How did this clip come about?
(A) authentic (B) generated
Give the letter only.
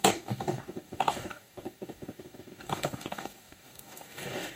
B